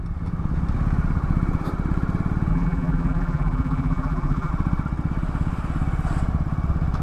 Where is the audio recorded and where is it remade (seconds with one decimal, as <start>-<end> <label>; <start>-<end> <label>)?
0.0-2.5 recorded; 2.5-4.5 remade; 4.5-7.0 recorded